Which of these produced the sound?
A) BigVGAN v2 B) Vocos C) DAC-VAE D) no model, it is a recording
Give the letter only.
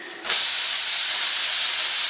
D